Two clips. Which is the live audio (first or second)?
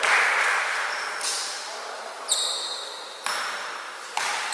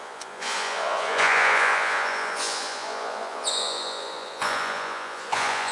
first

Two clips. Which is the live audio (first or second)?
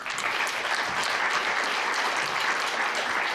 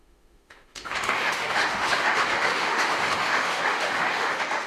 first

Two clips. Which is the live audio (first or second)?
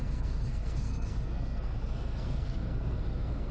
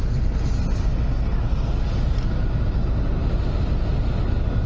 second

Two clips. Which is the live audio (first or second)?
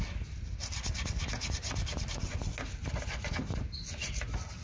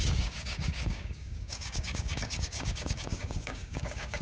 first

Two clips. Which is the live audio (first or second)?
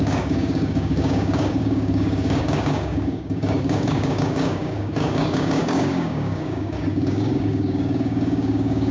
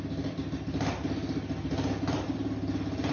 second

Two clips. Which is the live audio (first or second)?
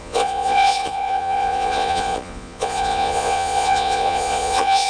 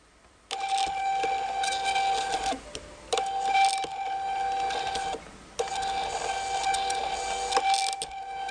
second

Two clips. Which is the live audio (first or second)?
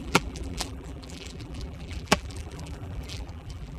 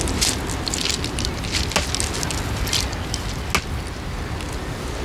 second